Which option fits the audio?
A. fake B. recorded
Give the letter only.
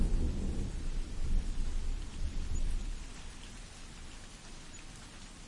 B